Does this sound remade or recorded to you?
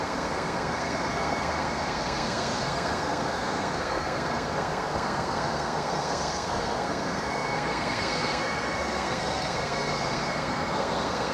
remade